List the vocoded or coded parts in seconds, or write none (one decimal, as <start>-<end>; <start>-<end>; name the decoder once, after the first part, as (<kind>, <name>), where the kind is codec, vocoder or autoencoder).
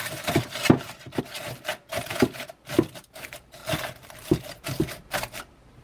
0.0-1.2 (vocoder, BigVGAN v2); 1.7-2.7